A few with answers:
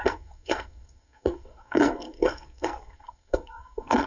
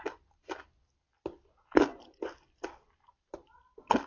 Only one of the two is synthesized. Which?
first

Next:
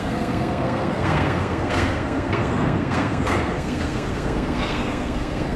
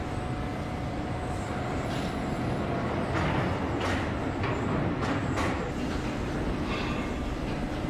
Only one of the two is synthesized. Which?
first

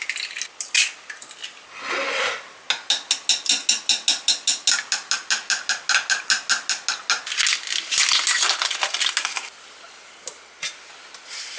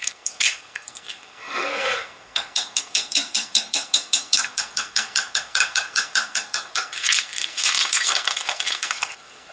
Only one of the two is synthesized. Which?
second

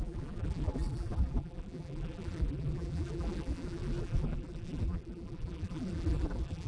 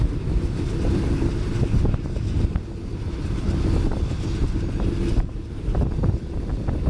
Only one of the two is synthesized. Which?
first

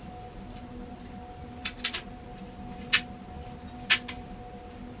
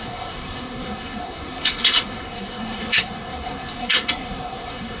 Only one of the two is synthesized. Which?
second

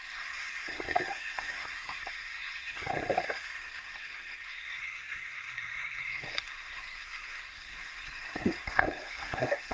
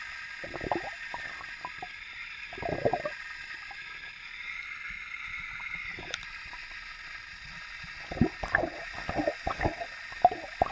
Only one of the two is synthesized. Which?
first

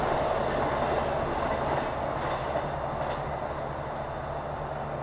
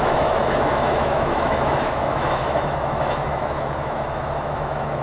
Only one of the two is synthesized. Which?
second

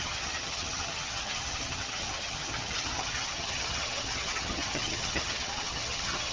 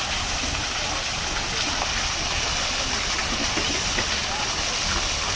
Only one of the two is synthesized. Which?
first